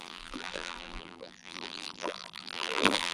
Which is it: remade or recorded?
remade